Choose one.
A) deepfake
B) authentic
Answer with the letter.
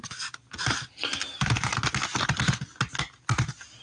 B